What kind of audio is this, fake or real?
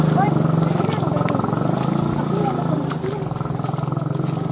real